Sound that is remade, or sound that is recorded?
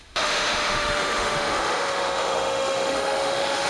remade